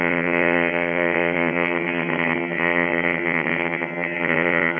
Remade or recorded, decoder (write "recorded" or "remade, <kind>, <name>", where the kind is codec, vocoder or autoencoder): remade, vocoder, HiFi-GAN